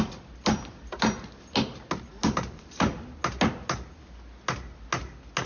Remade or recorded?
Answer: recorded